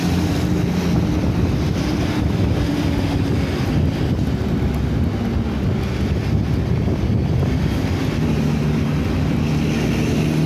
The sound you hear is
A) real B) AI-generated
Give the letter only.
A